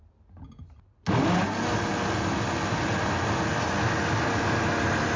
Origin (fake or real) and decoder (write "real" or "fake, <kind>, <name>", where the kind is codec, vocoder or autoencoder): real